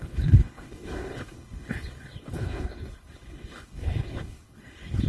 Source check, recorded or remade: remade